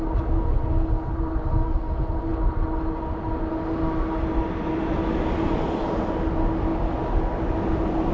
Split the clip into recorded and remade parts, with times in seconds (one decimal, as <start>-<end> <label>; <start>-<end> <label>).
0.0-8.1 recorded